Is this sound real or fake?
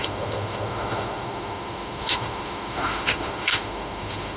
fake